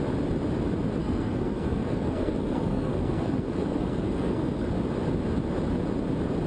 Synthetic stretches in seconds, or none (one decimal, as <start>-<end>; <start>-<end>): 1.0-4.7